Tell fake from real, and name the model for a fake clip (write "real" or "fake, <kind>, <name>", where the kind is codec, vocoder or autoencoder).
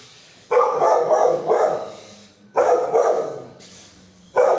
fake, codec, DAC